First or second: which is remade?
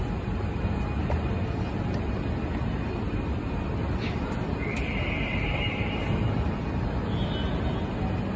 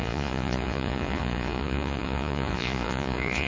second